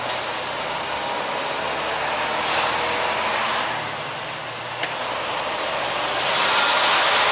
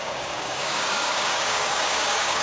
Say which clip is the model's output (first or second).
second